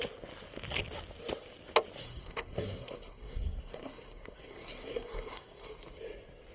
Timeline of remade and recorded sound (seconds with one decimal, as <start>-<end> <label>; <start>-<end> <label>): 0.0-2.0 recorded; 2.0-5.7 remade; 5.7-6.5 recorded